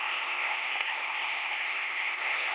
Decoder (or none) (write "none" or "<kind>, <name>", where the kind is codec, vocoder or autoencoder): codec, ZipCodec